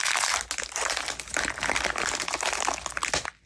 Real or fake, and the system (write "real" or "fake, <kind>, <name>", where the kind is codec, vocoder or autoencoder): real